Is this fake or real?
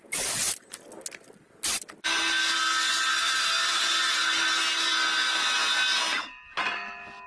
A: real